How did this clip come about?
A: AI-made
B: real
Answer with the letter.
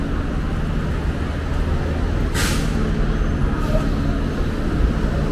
B